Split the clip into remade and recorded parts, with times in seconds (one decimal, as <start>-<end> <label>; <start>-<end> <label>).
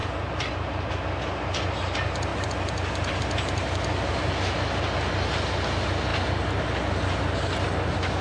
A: 0.0-8.2 recorded